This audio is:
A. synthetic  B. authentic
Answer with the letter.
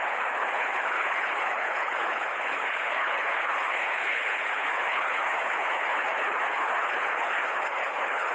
A